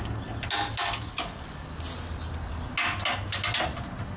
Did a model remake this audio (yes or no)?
no